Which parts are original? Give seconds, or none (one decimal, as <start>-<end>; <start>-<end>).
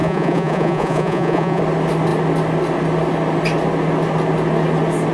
1.6-5.1